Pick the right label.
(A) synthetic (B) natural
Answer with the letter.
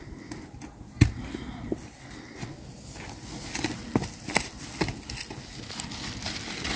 B